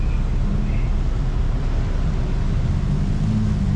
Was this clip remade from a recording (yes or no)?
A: no